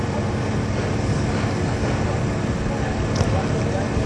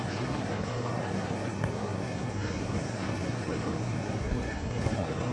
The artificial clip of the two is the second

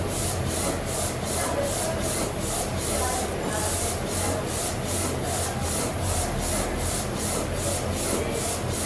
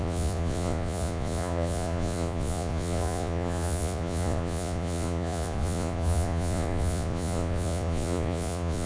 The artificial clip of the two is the second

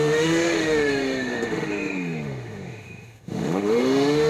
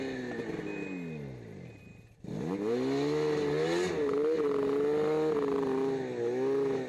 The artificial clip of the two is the first